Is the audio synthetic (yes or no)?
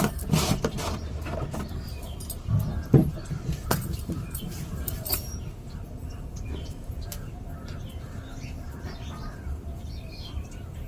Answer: yes